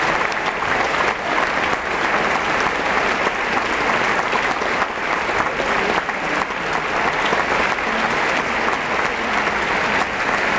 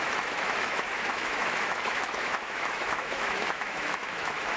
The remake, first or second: second